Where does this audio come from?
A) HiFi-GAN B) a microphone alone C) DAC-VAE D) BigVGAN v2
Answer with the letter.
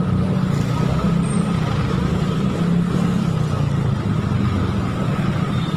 B